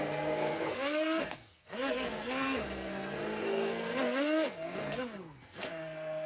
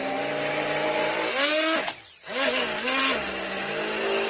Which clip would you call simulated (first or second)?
first